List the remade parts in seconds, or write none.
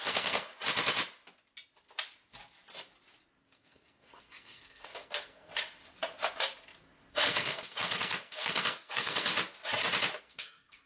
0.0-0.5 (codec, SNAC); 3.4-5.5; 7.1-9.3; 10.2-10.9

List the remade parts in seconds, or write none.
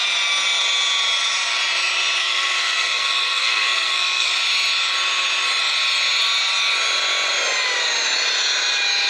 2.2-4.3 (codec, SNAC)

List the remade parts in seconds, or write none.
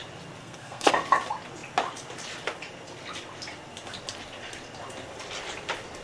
0.4-0.9 (codec, SNAC)